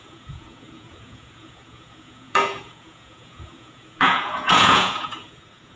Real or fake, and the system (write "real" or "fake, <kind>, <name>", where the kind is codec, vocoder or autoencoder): fake, vocoder, Vocos